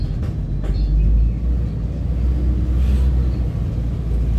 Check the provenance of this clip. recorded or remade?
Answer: recorded